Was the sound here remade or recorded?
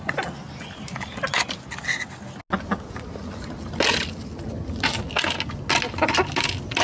recorded